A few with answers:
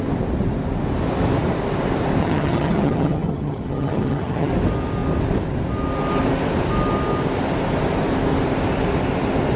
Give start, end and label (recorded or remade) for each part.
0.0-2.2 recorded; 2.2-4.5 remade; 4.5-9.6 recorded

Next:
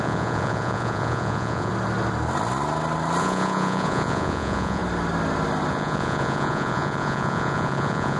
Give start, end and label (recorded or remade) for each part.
0.0-1.7 remade; 1.7-3.2 recorded; 3.2-4.8 remade; 4.8-5.7 recorded; 5.7-8.2 remade

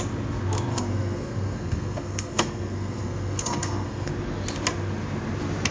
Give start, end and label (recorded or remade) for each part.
0.0-0.7 recorded; 0.7-4.1 remade; 4.1-5.7 recorded

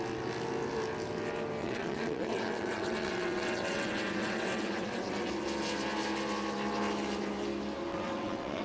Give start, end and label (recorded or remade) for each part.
0.0-1.6 recorded; 1.6-5.3 remade; 5.3-7.9 recorded; 7.9-8.6 remade

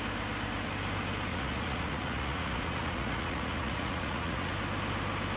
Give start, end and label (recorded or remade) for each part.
0.0-1.3 recorded; 1.3-4.5 remade; 4.5-5.4 recorded

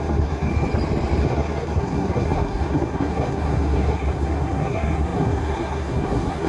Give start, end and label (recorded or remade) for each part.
0.0-0.5 remade; 0.5-1.2 recorded; 1.2-6.5 remade

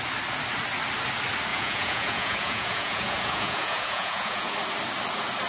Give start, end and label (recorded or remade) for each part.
0.0-1.5 recorded; 1.5-4.5 remade; 4.5-5.5 recorded

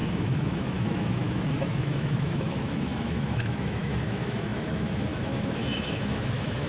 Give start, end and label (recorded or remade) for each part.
0.0-6.7 remade